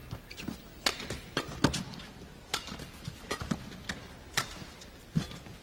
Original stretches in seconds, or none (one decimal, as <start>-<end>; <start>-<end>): 0.0-5.6